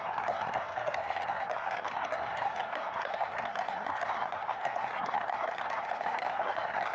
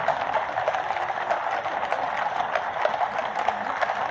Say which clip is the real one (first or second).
second